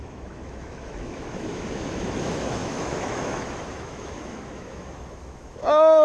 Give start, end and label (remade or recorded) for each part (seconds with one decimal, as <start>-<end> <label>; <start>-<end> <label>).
0.0-6.0 remade